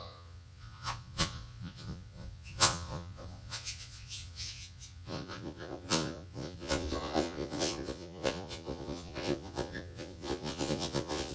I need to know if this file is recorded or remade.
remade